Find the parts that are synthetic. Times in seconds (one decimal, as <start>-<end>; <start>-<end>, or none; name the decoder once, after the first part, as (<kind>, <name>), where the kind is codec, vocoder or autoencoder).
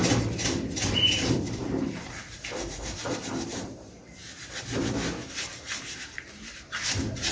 0.9-7.3 (vocoder, BigVGAN v2)